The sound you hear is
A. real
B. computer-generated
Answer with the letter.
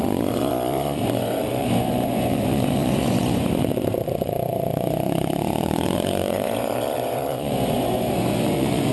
B